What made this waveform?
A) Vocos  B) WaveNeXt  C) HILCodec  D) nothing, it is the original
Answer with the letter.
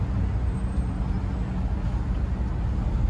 D